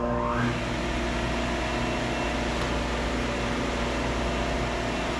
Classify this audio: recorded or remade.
recorded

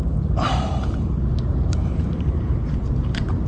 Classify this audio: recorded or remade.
remade